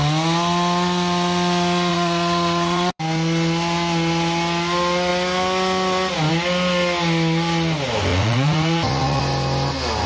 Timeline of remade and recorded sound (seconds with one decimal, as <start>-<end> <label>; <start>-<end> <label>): 0.0-1.9 recorded; 1.9-3.0 remade; 3.0-8.1 recorded; 8.1-9.2 remade; 9.2-10.1 recorded